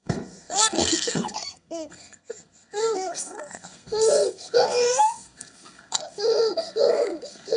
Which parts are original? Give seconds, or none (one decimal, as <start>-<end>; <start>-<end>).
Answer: none

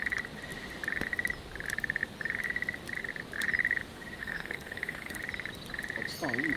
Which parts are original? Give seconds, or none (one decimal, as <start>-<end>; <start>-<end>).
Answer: 0.0-4.2; 5.2-6.6

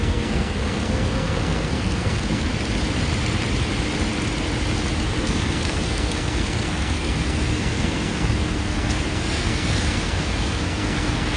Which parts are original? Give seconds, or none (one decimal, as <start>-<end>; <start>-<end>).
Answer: 2.5-5.2

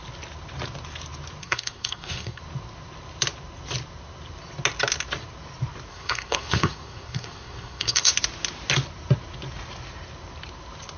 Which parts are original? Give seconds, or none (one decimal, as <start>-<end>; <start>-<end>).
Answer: 0.0-1.4; 2.4-5.9; 8.1-11.0